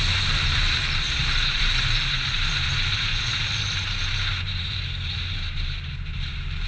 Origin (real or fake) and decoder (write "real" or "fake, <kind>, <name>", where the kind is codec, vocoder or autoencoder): fake, vocoder, BigVGAN v2